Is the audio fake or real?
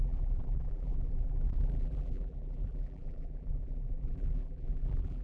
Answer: fake